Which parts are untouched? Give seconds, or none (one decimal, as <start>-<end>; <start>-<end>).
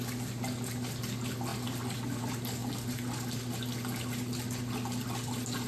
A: 0.0-5.7